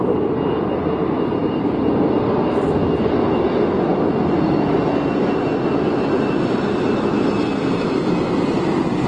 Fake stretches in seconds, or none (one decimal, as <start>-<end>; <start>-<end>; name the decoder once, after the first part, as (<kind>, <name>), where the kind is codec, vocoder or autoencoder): 1.4-2.2 (vocoder, BigVGAN v2); 7.6-8.3